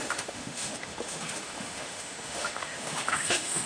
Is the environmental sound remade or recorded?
remade